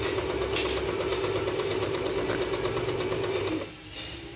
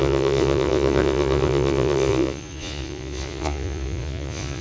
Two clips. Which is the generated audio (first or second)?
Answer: second